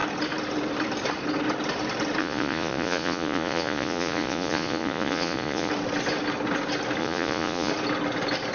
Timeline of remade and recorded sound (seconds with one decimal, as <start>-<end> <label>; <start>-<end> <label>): 0.0-2.2 recorded; 2.2-5.7 remade; 5.7-7.0 recorded; 7.0-7.7 remade; 7.7-8.5 recorded